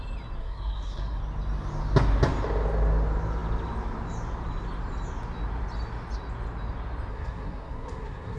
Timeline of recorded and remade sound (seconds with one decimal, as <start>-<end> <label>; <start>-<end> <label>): 0.0-0.4 recorded; 0.4-1.2 remade; 1.2-7.1 recorded; 7.1-8.4 remade